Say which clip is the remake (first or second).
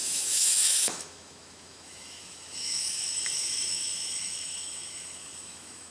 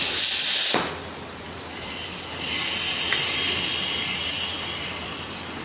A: first